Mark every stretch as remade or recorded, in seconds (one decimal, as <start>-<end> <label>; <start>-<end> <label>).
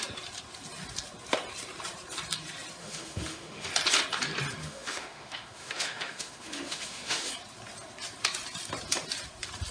0.0-2.8 recorded; 2.8-3.7 remade; 3.7-4.6 recorded; 4.6-7.3 remade; 7.3-9.7 recorded